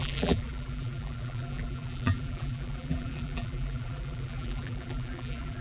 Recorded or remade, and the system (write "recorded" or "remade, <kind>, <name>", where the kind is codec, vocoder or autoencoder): remade, vocoder, BigVGAN v2